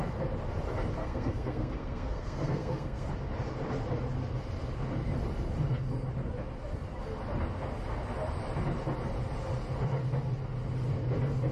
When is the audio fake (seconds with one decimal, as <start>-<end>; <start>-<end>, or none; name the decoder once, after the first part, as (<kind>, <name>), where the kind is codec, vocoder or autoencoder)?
1.0-3.1 (codec, SNAC)